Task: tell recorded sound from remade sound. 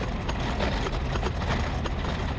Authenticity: recorded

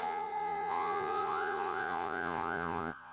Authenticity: remade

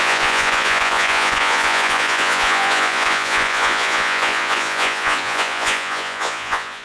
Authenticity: remade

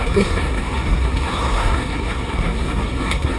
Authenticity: remade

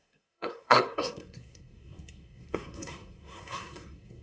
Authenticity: remade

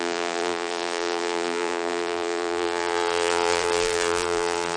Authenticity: remade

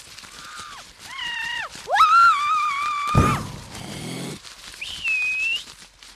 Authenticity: recorded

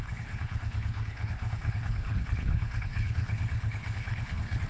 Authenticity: remade